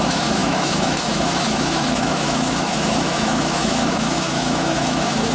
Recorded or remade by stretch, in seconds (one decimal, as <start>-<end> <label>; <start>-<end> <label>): 0.0-5.3 remade